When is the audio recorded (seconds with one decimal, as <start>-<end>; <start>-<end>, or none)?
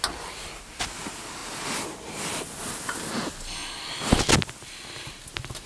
0.0-5.7